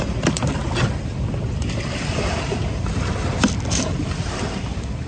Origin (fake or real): fake